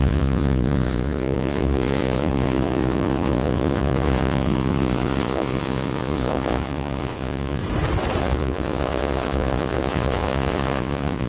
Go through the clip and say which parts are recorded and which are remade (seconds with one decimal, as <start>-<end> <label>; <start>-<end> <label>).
0.0-7.6 remade; 7.6-8.2 recorded; 8.2-11.3 remade